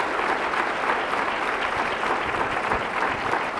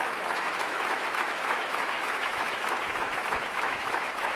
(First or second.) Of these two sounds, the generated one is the second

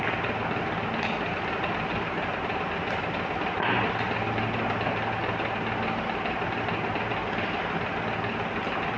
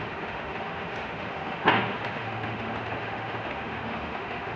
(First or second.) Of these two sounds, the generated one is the second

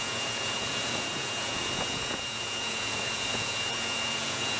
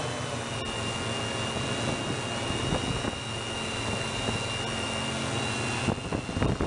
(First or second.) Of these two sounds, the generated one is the first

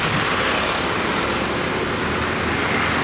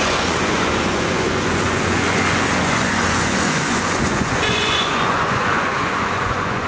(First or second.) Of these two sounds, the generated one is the second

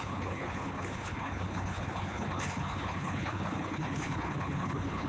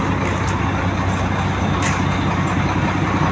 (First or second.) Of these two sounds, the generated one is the first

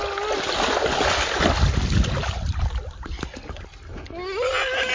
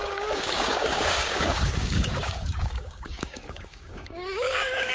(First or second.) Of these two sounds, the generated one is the second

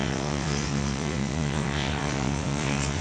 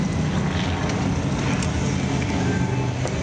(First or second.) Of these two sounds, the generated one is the first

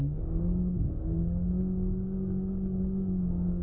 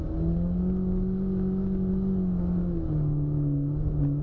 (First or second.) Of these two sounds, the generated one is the first